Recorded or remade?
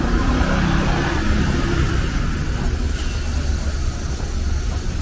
recorded